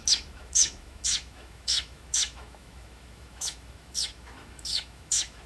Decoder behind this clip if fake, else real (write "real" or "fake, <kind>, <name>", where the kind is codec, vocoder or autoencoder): fake, autoencoder, DAC-VAE